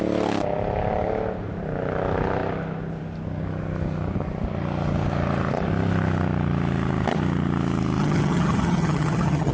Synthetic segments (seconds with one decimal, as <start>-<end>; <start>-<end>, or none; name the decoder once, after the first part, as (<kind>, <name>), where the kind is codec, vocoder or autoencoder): 8.0-9.5 (vocoder, HiFi-GAN)

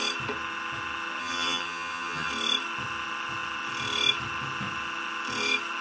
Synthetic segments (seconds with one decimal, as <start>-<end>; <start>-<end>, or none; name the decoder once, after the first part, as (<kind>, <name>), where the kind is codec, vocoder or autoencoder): 1.2-2.3 (vocoder, HiFi-GAN)